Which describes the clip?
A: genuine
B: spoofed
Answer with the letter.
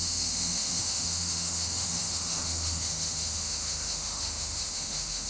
B